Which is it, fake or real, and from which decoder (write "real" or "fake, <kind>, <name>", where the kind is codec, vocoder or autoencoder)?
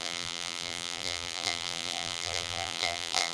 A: fake, vocoder, BigVGAN v2